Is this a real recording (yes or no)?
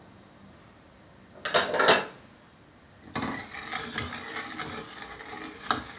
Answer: yes